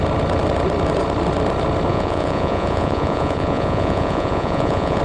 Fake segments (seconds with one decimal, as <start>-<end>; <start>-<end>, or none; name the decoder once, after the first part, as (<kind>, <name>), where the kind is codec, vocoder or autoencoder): 1.9-5.0 (vocoder, Vocos)